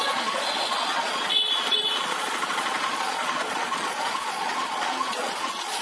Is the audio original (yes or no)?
no